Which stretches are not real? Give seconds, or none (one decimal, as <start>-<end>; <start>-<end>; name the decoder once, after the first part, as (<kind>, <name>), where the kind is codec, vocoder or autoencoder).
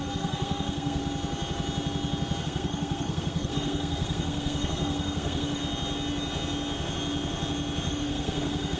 0.0-1.0 (codec, SNAC); 2.4-5.6; 7.9-8.8